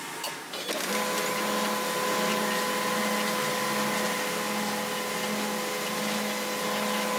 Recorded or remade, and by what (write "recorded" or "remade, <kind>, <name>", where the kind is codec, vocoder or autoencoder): recorded